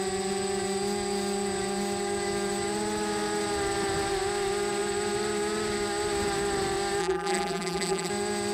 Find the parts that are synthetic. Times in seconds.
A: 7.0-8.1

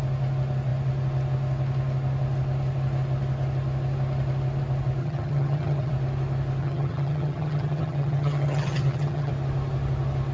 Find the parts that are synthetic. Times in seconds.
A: 5.0-5.9; 6.6-9.3

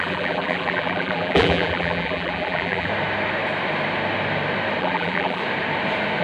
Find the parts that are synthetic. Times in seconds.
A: 0.0-2.9; 4.8-5.4

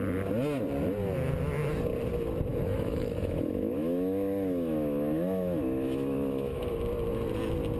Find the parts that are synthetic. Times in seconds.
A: 2.5-6.7

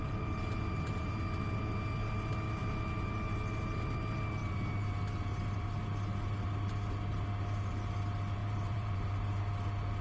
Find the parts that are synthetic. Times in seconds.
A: 8.4-9.4

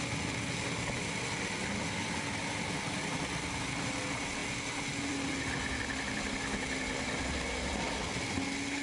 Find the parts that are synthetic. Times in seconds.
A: none